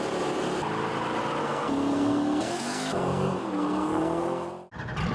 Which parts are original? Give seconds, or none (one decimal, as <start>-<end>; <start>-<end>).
0.0-1.4; 4.5-5.1

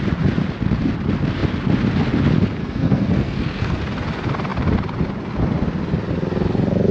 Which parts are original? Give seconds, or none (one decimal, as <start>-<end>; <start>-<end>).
0.0-2.6; 3.8-6.9

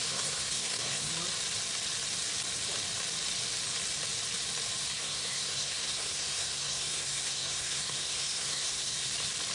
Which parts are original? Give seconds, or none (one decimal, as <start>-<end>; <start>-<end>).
1.1-4.8; 9.1-9.5